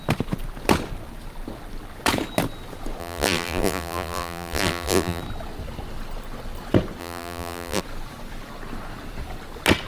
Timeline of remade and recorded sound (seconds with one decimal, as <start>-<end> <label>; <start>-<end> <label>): 0.0-3.0 recorded; 3.0-5.2 remade; 5.2-7.0 recorded; 7.0-7.8 remade; 7.8-9.9 recorded

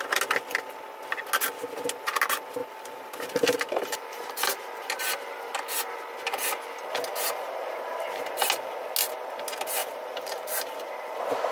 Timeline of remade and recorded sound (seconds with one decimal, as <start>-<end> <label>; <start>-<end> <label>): 0.0-2.6 recorded; 2.6-4.9 remade; 4.9-7.1 recorded; 7.1-8.2 remade; 8.2-9.8 recorded; 9.8-10.9 remade; 10.9-11.5 recorded